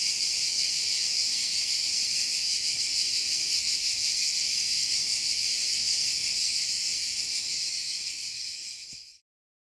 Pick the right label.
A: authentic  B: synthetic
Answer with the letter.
B